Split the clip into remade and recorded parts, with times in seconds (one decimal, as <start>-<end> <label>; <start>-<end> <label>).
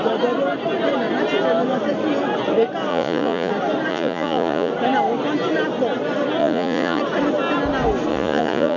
0.0-2.9 recorded; 2.9-3.5 remade; 3.5-3.9 recorded; 3.9-4.7 remade; 4.7-6.4 recorded; 6.4-7.0 remade; 7.0-8.1 recorded; 8.1-8.8 remade